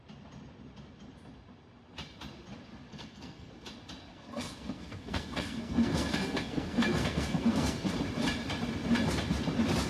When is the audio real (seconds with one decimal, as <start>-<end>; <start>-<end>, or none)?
0.0-2.9; 3.5-4.1; 7.9-9.9